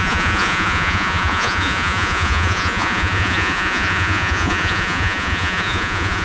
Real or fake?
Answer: fake